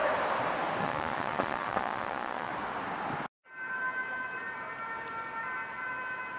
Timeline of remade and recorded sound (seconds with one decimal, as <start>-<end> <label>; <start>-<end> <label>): 0.0-0.8 recorded; 0.8-2.5 remade; 2.5-6.4 recorded